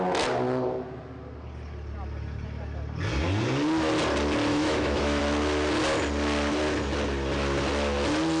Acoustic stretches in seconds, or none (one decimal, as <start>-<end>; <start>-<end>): 0.0-4.5; 5.2-8.4